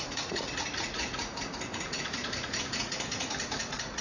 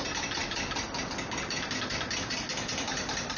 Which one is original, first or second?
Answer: second